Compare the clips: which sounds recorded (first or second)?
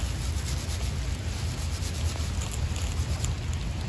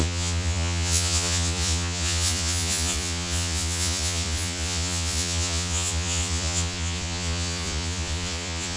first